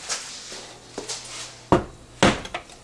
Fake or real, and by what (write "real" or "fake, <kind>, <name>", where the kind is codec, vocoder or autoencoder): real